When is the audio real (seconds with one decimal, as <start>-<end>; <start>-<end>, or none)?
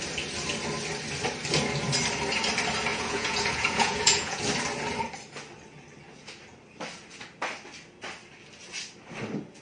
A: 0.0-2.9; 4.4-9.6